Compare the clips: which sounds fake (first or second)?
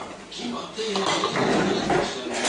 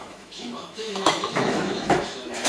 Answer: second